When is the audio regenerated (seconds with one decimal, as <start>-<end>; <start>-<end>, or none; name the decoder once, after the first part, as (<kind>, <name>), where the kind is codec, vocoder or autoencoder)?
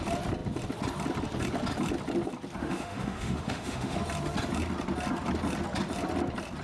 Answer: 2.6-4.0 (autoencoder, DAC-VAE)